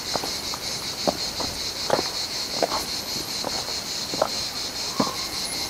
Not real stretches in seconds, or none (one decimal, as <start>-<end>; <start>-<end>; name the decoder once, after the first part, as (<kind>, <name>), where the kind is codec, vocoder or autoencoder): none